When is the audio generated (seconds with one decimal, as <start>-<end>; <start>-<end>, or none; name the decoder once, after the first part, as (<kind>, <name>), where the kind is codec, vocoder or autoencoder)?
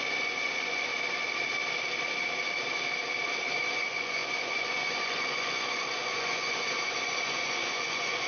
0.0-0.9 (vocoder, Vocos); 3.8-8.3